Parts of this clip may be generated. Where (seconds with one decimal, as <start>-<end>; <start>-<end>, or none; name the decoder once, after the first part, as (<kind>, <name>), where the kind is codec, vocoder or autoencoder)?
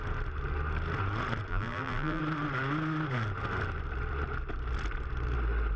1.5-2.2 (vocoder, BigVGAN v2)